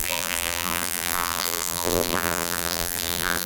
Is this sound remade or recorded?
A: remade